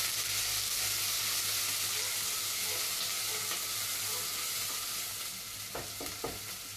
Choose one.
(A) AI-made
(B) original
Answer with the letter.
B